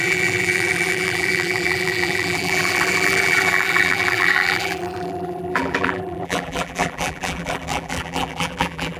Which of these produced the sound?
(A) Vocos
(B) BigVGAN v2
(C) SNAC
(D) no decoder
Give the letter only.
B